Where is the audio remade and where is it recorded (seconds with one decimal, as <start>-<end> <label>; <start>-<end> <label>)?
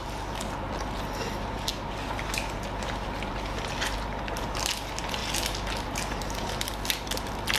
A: 0.0-7.6 recorded